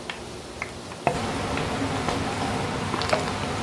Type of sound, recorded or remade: recorded